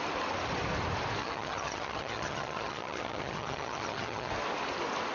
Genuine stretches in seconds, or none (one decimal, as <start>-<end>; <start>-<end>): 0.0-1.2; 4.3-5.1